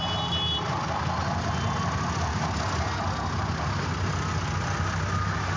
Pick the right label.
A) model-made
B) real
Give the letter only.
B